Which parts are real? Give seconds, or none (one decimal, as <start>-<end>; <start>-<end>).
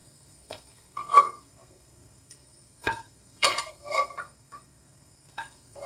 none